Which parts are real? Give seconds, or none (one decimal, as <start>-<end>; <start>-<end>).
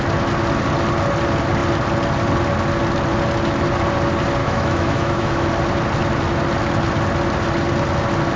0.0-4.4; 5.5-8.4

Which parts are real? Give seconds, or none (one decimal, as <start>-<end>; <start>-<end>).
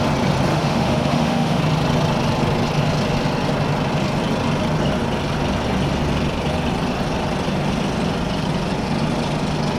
0.0-0.5; 1.6-9.8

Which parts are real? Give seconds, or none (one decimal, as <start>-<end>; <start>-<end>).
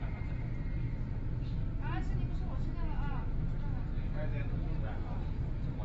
0.0-5.8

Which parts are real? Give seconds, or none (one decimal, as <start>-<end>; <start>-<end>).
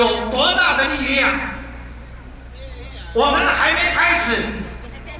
0.0-5.2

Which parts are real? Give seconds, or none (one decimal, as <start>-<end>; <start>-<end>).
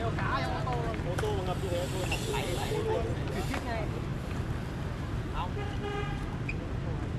0.0-7.2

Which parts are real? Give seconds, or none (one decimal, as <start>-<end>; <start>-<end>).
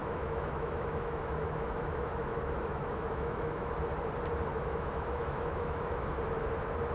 3.7-4.5; 6.2-6.9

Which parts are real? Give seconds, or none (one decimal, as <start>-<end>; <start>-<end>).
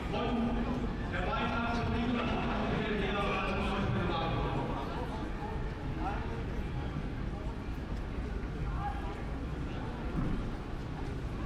0.0-2.1; 2.8-11.5